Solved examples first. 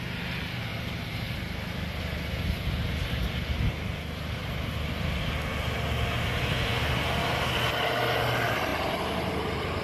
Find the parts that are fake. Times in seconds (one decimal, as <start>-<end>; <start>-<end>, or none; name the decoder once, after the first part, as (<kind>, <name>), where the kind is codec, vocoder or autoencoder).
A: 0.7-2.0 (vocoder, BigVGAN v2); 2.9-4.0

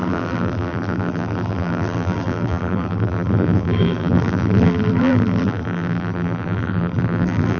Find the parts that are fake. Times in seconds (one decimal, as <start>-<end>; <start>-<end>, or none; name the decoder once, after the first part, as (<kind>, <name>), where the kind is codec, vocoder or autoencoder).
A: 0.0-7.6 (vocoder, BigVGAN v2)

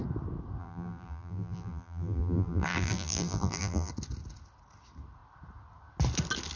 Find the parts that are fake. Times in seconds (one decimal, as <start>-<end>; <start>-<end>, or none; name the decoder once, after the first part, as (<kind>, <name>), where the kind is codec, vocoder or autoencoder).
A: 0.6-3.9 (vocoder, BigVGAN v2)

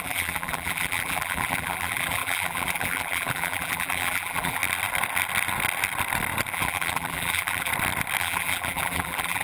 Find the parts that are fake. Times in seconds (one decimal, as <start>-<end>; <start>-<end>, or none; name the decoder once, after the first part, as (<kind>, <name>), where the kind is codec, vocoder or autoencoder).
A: 0.0-4.6 (vocoder, BigVGAN v2); 6.5-7.7; 8.2-9.4

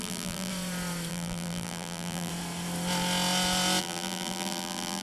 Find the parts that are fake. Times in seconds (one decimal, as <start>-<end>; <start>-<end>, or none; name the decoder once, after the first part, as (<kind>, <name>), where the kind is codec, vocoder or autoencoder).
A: 0.0-0.5 (vocoder, BigVGAN v2); 1.1-2.3; 3.8-5.0